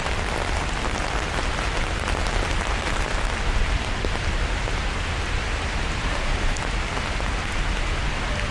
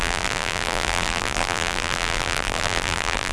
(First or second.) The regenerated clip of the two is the second